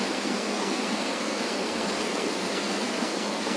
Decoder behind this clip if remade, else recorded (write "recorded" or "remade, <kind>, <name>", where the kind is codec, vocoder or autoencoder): remade, codec, SNAC